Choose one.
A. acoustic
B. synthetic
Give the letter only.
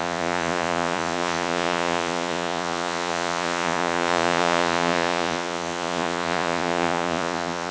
B